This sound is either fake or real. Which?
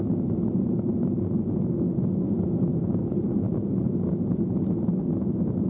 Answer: real